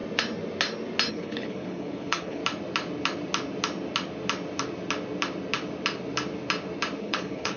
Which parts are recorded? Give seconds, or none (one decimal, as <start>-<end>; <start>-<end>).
0.0-1.1; 2.4-7.0